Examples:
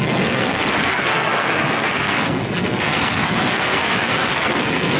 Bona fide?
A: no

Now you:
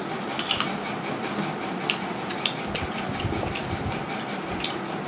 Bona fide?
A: yes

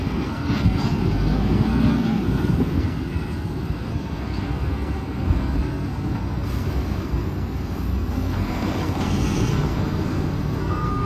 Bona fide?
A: no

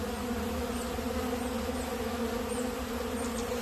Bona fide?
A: yes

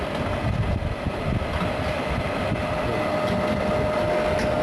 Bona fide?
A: yes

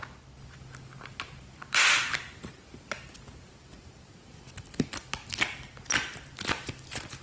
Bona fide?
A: yes